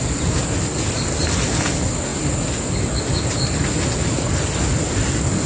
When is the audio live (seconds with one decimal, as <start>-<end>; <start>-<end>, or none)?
0.0-5.5